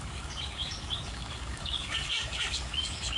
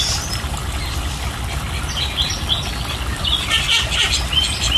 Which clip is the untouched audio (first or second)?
second